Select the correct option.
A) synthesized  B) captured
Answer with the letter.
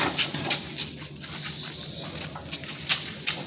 B